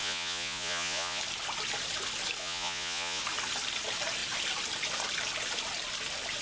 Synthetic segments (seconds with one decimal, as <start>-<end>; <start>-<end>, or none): 0.0-1.2; 2.4-3.2